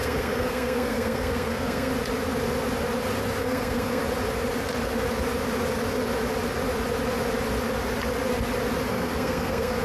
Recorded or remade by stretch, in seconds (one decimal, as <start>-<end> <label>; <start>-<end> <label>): 0.0-1.9 remade; 1.9-3.4 recorded; 3.4-4.0 remade; 4.0-8.9 recorded; 8.9-9.8 remade